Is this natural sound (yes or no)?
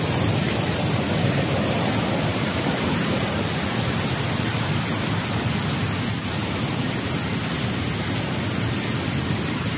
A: yes